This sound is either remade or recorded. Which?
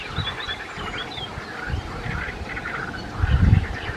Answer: recorded